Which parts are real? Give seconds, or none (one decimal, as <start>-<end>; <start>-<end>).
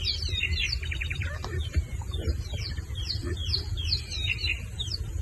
none